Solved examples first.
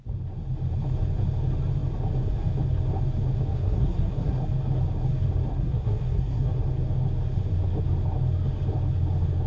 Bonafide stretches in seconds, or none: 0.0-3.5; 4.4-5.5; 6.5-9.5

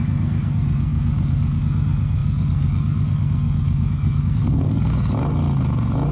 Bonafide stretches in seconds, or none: 4.9-6.1